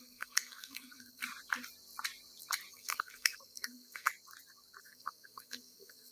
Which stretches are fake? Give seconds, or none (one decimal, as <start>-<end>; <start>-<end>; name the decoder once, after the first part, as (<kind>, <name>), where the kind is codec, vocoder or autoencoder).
0.0-1.2 (codec, SNAC); 2.7-4.1; 4.8-6.1